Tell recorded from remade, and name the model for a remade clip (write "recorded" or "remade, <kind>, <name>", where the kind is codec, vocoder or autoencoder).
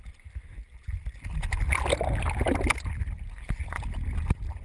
recorded